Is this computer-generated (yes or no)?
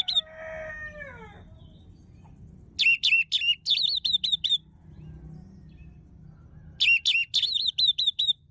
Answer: no